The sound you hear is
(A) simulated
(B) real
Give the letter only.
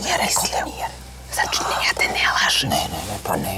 B